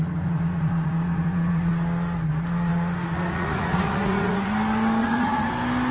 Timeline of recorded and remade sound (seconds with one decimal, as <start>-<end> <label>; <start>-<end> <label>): 0.0-1.7 remade; 1.7-2.7 recorded; 2.7-4.5 remade; 4.5-5.0 recorded; 5.0-5.5 remade; 5.5-5.9 recorded